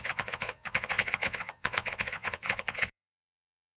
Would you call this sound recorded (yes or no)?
no